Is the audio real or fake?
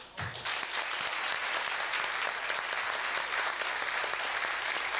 real